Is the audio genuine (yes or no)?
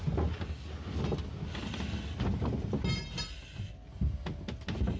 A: yes